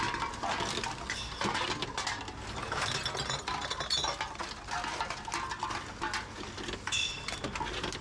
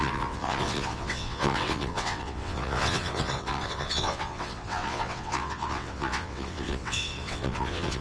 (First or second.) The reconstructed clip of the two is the second